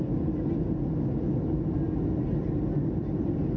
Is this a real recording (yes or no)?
yes